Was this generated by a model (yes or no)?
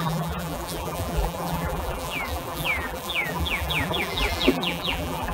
yes